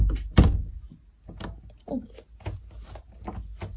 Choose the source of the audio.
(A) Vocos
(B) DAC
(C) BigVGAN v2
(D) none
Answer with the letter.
D